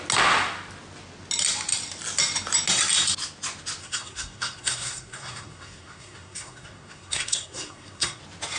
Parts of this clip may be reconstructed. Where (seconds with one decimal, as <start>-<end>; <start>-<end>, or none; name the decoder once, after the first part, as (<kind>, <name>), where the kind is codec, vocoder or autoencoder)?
3.8-8.2 (codec, SNAC)